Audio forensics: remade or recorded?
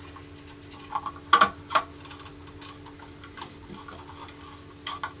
recorded